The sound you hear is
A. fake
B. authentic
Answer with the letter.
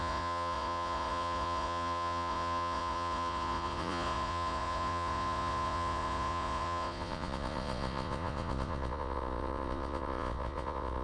A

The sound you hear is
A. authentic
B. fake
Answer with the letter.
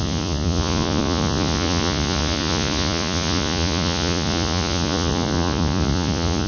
B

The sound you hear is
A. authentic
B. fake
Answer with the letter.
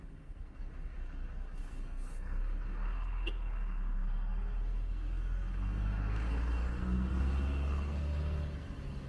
B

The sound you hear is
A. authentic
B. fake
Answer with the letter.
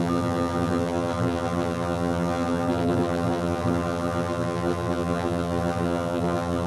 B